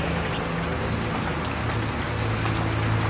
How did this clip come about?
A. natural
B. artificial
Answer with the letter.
A